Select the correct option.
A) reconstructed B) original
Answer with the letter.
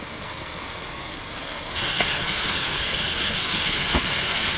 A